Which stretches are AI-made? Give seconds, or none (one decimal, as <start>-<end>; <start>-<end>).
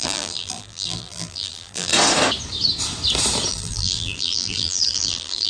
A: 0.0-1.9; 3.5-5.5